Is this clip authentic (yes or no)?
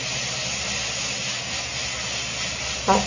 yes